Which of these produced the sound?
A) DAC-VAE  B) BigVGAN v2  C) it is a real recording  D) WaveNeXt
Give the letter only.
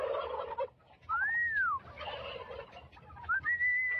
C